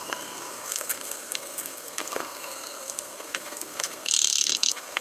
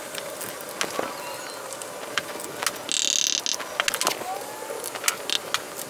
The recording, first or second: second